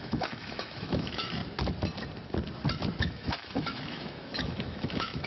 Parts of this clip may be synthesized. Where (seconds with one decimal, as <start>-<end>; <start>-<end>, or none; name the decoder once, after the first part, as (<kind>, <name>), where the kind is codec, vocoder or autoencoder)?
0.0-1.4 (autoencoder, DAC-VAE); 3.0-5.3

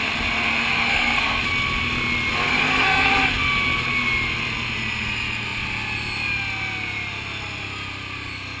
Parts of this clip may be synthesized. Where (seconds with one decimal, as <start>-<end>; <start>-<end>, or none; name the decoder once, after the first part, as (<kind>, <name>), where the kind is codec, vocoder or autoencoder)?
0.5-1.4 (codec, SNAC); 2.5-3.1

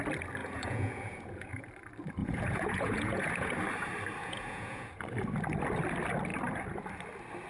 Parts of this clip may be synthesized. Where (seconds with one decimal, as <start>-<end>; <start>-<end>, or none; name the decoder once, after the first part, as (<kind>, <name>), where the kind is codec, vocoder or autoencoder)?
0.4-1.7 (vocoder, Vocos); 2.2-3.5; 4.2-5.0

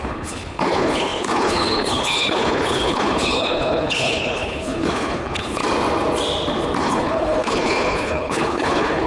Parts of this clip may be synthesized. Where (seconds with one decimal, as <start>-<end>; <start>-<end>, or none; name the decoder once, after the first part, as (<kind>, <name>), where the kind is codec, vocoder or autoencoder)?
0.0-5.6 (codec, HILCodec); 6.8-9.1

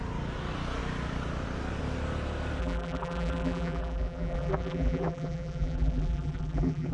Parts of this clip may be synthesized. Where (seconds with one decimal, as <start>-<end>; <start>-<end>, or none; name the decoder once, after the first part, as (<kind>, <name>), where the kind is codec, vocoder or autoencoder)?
2.6-6.9 (vocoder, BigVGAN v2)

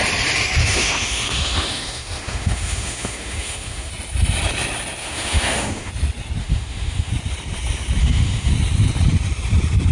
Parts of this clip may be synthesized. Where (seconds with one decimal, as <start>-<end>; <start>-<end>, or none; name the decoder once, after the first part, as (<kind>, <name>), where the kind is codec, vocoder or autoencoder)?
0.6-3.9 (autoencoder, DAC-VAE); 5.0-5.9; 6.4-7.1; 8.0-8.5